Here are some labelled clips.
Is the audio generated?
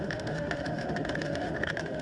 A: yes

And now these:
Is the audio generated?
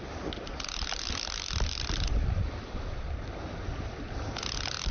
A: no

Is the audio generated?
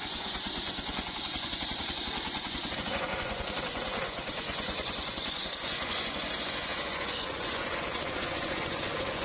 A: yes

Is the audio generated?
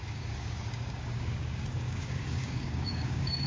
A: yes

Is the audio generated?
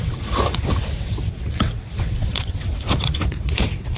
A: yes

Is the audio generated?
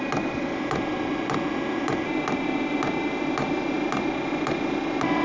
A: no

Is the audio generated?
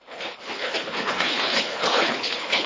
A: yes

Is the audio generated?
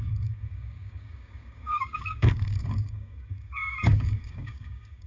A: yes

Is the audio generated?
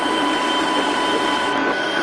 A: no